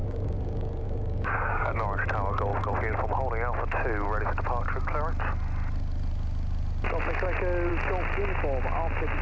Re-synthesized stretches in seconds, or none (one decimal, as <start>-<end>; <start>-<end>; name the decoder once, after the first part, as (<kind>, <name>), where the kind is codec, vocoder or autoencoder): 0.0-1.7 (codec, DAC)